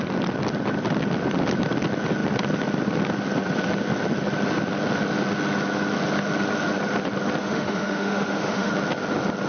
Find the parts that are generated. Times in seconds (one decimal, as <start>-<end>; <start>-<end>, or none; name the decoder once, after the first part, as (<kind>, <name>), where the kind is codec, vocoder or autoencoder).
7.4-8.7 (autoencoder, DAC-VAE)